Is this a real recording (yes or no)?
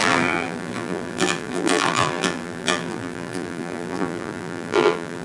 no